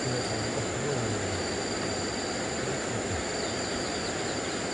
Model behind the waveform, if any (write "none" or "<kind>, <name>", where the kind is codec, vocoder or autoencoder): none